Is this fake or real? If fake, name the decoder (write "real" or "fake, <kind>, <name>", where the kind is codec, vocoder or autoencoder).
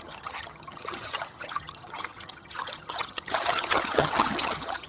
fake, vocoder, HiFi-GAN